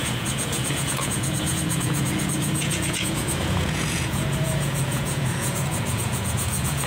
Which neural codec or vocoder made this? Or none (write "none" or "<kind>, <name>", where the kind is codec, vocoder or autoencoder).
vocoder, Vocos